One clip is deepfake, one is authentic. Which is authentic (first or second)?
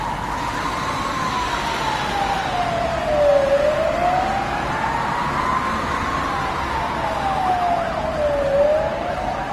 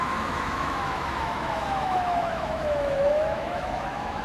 first